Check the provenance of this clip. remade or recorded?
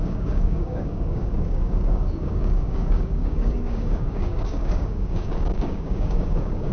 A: remade